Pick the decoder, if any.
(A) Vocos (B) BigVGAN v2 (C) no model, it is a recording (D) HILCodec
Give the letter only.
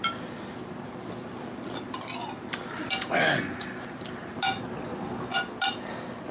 C